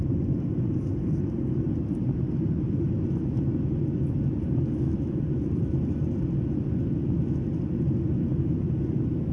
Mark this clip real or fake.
fake